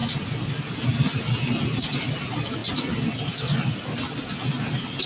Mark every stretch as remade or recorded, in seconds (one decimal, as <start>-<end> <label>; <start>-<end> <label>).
0.0-5.1 recorded